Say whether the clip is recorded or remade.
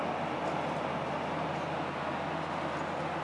recorded